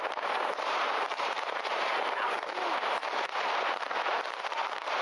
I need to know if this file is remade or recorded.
remade